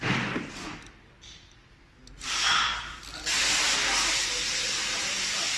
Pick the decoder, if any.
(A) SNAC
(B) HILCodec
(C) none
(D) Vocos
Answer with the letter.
C